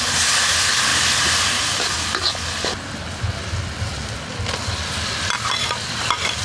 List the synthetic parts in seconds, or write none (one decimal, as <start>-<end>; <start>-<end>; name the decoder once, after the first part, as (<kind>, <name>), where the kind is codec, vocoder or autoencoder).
none